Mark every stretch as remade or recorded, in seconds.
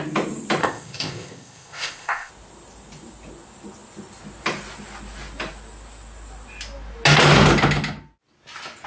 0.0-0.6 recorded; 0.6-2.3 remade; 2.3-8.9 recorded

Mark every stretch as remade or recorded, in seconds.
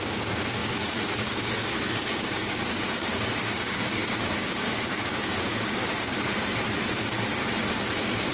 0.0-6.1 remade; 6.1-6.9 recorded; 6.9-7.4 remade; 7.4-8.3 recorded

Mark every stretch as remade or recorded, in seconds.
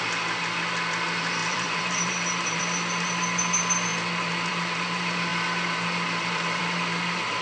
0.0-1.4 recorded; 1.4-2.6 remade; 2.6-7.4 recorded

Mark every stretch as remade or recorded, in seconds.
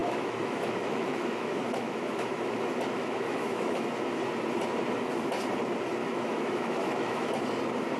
0.0-3.9 remade; 3.9-6.0 recorded; 6.0-7.3 remade; 7.3-8.0 recorded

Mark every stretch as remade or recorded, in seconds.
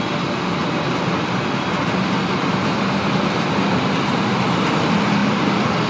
0.0-5.9 recorded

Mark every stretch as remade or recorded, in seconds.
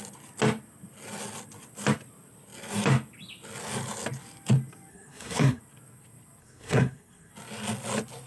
0.0-4.9 recorded; 4.9-5.6 remade; 5.6-6.4 recorded; 6.4-7.3 remade; 7.3-8.3 recorded